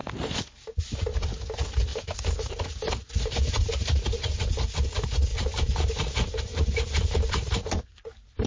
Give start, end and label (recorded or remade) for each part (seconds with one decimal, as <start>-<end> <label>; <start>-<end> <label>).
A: 0.0-0.8 remade; 0.8-1.9 recorded; 1.9-4.7 remade; 4.7-5.3 recorded; 5.3-7.8 remade; 7.8-8.5 recorded